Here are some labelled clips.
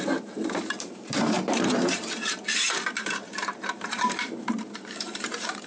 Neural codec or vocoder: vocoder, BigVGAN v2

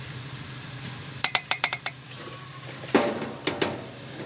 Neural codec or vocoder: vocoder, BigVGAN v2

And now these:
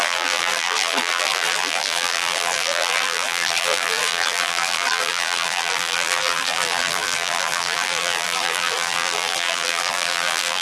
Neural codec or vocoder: vocoder, BigVGAN v2